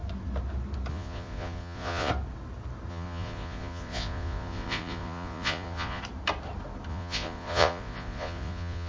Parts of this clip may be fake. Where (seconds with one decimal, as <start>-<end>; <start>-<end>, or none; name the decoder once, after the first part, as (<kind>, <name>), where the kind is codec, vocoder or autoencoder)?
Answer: 0.9-2.1 (vocoder, Vocos); 2.9-6.0; 6.9-8.9